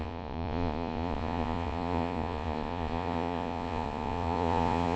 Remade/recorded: remade